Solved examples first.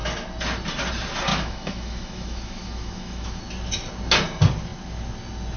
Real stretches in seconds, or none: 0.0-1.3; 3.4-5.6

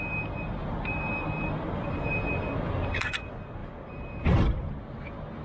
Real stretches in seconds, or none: 0.0-0.6; 2.1-3.6; 4.8-5.4

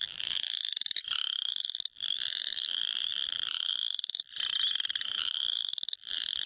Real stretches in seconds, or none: 0.7-1.5; 4.3-5.2

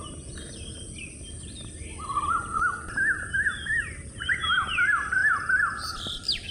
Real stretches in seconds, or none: 0.0-5.2

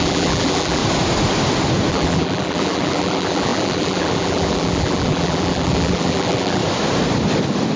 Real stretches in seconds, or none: 0.8-1.9; 6.6-7.8

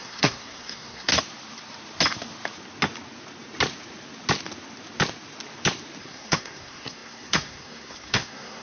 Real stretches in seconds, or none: 1.1-6.0

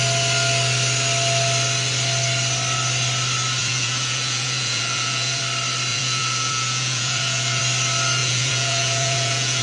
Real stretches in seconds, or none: 0.0-3.6; 5.4-5.9; 7.6-8.2